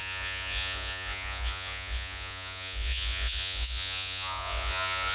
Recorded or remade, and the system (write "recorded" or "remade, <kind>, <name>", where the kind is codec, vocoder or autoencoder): remade, vocoder, Vocos